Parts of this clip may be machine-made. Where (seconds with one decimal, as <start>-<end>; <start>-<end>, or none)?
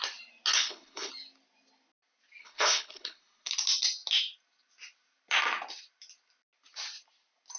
0.5-1.1; 2.4-3.5